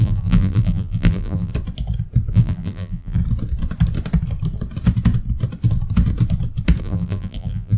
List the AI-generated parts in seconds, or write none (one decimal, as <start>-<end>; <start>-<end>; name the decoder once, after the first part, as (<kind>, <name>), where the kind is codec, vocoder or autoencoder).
0.0-1.5 (vocoder, BigVGAN v2); 2.3-3.2; 6.8-7.8